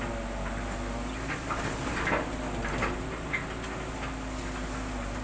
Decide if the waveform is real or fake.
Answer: real